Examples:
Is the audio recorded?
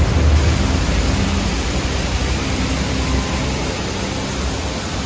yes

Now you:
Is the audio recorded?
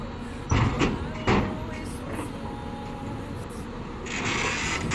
yes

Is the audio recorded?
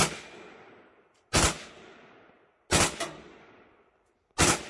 yes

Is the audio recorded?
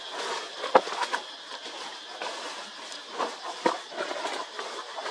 yes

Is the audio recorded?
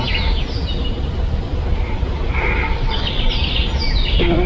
yes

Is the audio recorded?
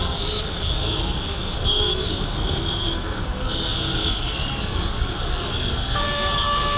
no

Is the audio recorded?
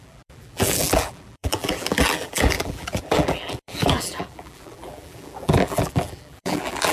no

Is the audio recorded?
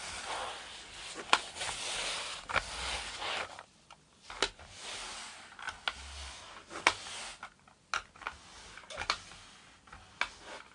yes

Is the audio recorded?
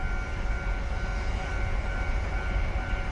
yes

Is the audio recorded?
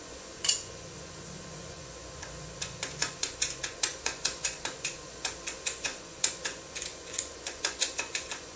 no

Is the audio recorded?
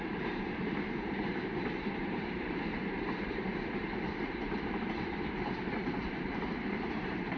no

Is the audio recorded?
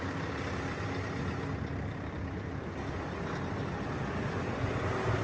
yes